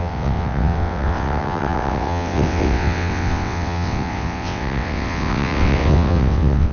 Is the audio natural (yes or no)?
no